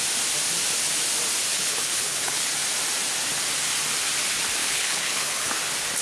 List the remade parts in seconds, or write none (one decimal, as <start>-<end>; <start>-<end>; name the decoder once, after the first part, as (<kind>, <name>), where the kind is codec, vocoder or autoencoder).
1.5-2.5 (codec, HILCodec); 4.6-5.5